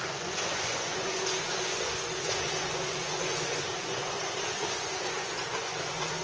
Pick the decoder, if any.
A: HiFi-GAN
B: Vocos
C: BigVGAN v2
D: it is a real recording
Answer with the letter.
B